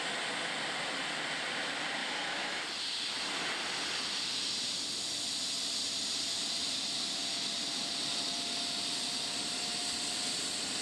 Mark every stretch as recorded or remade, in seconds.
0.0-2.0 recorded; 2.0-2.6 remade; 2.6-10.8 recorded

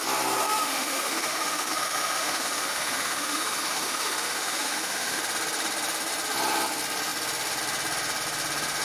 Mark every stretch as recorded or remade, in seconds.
0.0-0.4 recorded; 0.4-5.2 remade; 5.2-8.8 recorded

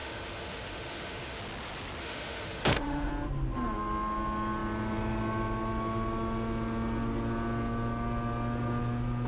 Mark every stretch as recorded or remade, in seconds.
0.0-1.4 remade; 1.4-2.0 recorded; 2.0-3.1 remade; 3.1-9.3 recorded

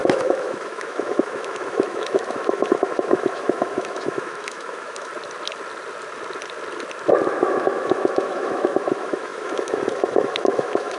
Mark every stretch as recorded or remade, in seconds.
0.0-5.1 remade; 5.1-7.3 recorded; 7.3-11.0 remade

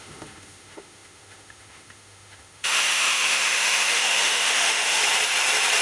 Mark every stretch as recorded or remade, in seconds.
0.0-5.0 remade; 5.0-5.8 recorded

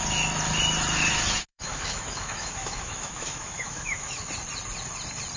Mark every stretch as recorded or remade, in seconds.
0.0-1.5 recorded; 1.5-4.3 remade; 4.3-5.4 recorded

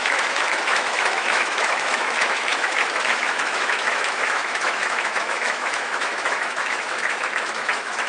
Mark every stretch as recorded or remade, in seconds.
0.0-8.1 remade

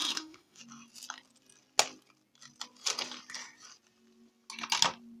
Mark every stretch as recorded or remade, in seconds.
0.0-0.6 remade; 0.6-5.2 recorded